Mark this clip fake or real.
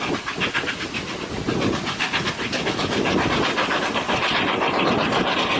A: real